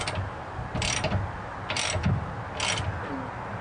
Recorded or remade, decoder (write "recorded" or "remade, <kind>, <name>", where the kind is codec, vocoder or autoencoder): recorded